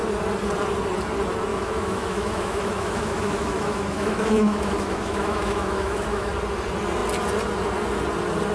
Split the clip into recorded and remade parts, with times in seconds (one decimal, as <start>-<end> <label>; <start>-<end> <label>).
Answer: 0.0-1.5 recorded; 1.5-6.3 remade; 6.3-8.5 recorded